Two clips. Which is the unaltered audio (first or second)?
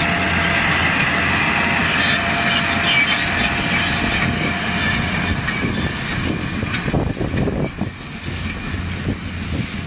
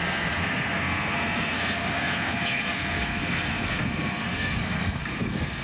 first